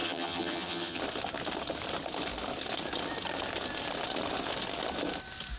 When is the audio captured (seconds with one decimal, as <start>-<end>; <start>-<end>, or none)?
1.0-5.6